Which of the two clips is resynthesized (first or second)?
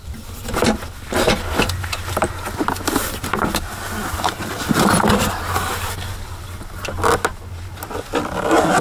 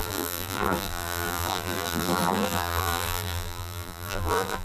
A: second